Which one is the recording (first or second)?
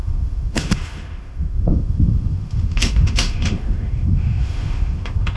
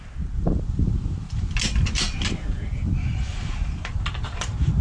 second